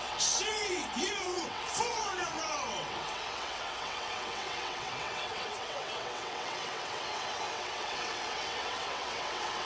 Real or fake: fake